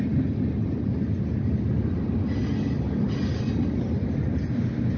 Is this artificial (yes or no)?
no